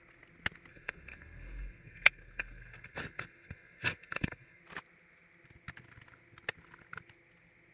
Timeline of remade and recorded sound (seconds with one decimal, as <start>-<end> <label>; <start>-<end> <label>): 0.0-0.7 recorded; 0.7-4.6 remade; 4.6-7.7 recorded